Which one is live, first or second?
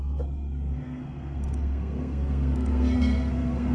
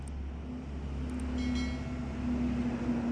second